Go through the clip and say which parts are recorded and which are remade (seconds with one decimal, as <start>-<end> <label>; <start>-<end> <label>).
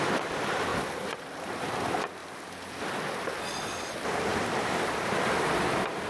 0.0-2.2 remade; 2.2-2.7 recorded; 2.7-4.3 remade; 4.3-6.1 recorded